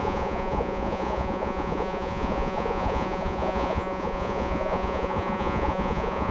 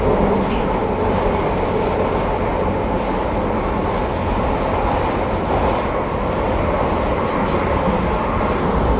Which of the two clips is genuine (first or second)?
second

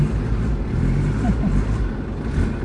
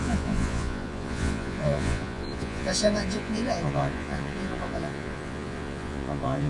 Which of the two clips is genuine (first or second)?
first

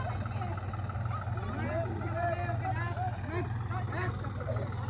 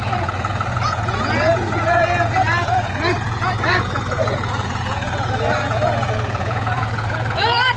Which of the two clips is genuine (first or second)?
first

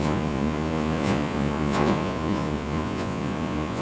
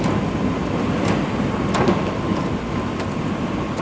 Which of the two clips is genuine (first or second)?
second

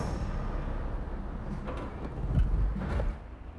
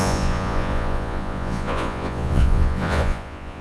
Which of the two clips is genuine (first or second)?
first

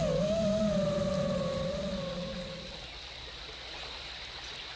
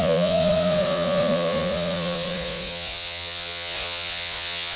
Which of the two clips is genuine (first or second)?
first